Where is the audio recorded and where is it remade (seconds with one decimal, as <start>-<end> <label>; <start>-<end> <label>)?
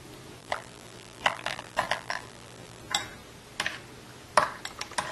0.0-0.4 recorded; 0.4-2.8 remade; 2.8-5.1 recorded